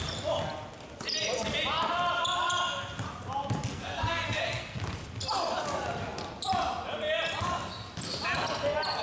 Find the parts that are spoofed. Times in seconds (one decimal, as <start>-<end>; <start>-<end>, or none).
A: 3.6-4.8